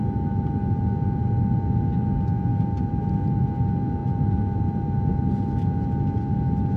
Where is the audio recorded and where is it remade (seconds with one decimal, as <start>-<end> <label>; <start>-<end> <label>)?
0.0-6.8 recorded